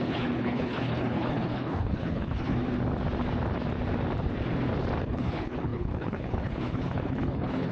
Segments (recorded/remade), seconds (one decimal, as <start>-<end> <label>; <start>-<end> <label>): 0.0-2.6 remade; 2.6-5.0 recorded; 5.0-7.7 remade